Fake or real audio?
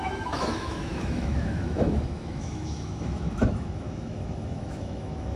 fake